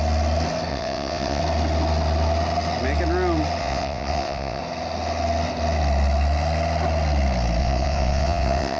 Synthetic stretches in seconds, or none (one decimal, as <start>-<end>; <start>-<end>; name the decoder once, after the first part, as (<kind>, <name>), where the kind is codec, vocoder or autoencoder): 0.7-1.4 (vocoder, WaveNeXt); 3.6-4.6; 7.6-8.8

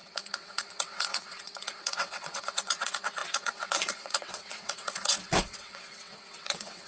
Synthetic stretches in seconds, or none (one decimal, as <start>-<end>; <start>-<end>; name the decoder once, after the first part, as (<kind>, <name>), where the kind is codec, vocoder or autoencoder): 0.0-6.9 (vocoder, WaveNeXt)

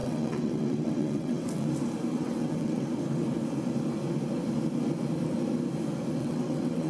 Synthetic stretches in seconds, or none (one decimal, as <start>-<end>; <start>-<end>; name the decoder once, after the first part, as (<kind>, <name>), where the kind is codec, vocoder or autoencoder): 0.0-1.7 (vocoder, WaveNeXt); 2.1-2.9; 6.2-6.9

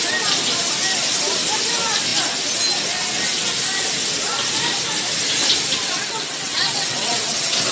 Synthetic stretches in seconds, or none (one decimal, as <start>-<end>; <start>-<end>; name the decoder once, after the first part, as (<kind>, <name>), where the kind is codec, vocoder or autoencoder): 5.8-7.7 (vocoder, WaveNeXt)

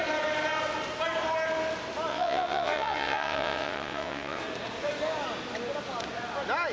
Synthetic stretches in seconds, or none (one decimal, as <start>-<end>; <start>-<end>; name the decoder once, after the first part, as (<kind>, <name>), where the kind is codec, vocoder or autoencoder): 2.1-4.4 (vocoder, WaveNeXt)

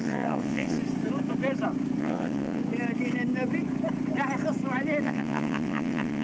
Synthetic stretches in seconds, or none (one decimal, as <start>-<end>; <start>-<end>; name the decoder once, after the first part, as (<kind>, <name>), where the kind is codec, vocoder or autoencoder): 0.0-0.8 (vocoder, WaveNeXt); 2.0-2.6; 5.0-6.2

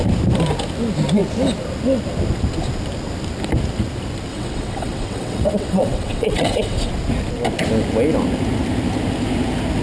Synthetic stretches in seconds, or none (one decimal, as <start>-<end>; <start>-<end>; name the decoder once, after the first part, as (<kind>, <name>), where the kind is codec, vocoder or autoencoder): 4.3-6.9 (vocoder, WaveNeXt)

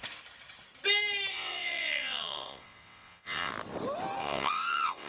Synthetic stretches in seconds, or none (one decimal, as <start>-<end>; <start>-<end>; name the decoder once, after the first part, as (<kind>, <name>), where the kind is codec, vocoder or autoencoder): 1.3-3.5 (vocoder, WaveNeXt); 4.2-5.1